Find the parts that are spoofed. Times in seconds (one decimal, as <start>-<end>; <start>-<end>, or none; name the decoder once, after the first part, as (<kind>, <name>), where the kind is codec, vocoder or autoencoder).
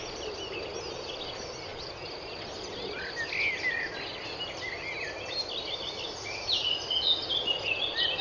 none